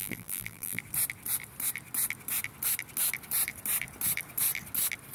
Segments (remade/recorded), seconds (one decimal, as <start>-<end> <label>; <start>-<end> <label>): 0.0-0.8 remade; 0.8-5.1 recorded